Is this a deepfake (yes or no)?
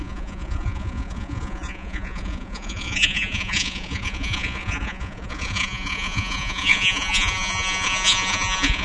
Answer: yes